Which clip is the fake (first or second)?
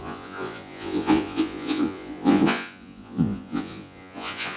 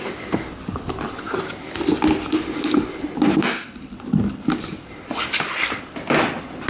first